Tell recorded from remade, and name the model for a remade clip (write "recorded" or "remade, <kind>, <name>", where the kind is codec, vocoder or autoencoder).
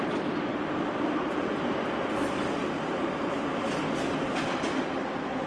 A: recorded